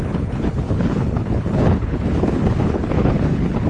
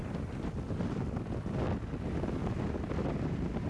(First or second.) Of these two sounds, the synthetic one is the first